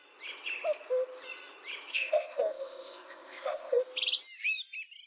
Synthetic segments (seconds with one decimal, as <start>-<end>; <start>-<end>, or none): 1.9-3.8